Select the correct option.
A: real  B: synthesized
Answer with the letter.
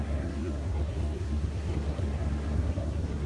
B